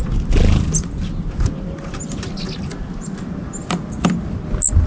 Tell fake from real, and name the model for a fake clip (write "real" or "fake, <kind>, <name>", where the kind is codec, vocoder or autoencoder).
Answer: real